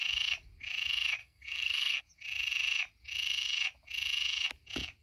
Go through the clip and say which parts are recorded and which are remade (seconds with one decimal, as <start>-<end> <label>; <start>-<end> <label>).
0.0-1.2 recorded; 1.2-2.0 remade; 2.0-5.0 recorded